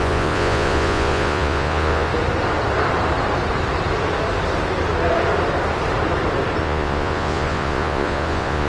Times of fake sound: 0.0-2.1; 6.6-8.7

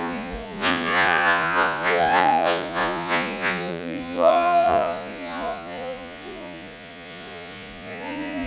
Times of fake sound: 0.0-8.5

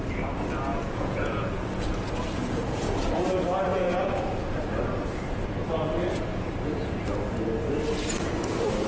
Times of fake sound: 0.7-3.2; 3.7-4.2; 6.3-6.9

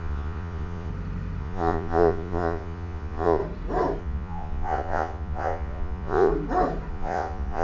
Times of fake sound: 0.0-0.9; 1.4-3.4; 4.0-6.3; 6.9-7.6

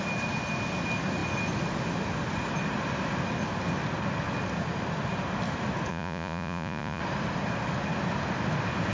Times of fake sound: 5.9-7.0

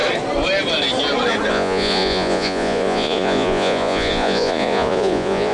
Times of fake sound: 1.5-5.5